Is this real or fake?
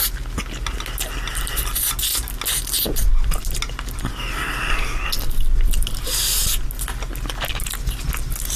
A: real